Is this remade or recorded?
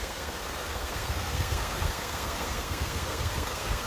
remade